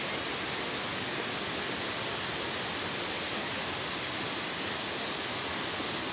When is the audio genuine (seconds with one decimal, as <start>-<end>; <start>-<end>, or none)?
0.0-6.1